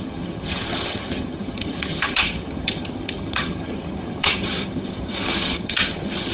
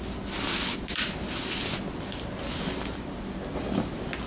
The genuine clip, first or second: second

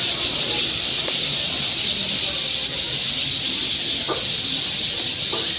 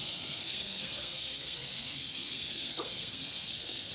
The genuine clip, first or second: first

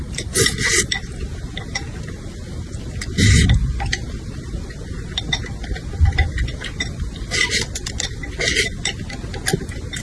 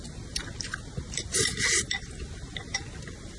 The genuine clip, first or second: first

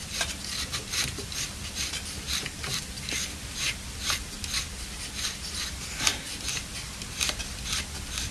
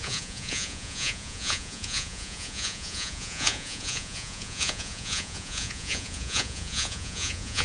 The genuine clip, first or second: first